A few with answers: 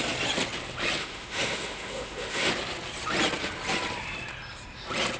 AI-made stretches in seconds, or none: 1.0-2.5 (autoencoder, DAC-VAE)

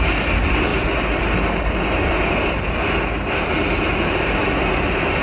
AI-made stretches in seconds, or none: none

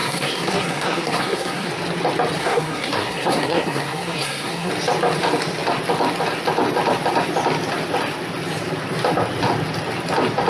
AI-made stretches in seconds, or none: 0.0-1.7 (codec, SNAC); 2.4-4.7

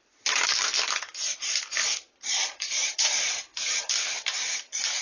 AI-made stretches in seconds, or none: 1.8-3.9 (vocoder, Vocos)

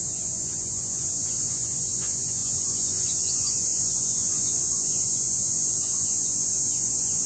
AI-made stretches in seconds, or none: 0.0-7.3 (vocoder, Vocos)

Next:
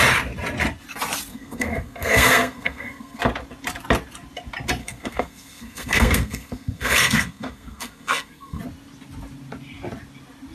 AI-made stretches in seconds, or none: 1.3-3.2 (codec, SNAC); 4.8-8.6

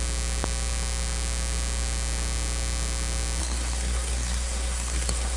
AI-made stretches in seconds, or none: 3.4-5.4 (codec, SNAC)